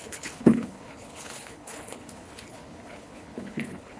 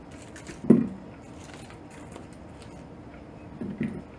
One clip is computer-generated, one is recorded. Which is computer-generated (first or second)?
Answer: first